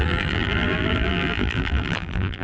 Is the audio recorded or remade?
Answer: remade